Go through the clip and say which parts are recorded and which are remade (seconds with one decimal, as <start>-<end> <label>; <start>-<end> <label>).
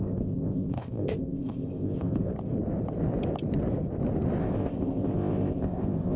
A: 0.0-2.3 remade; 2.3-4.4 recorded; 4.4-6.2 remade